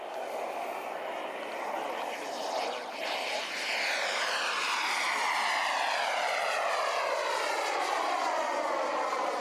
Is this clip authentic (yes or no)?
yes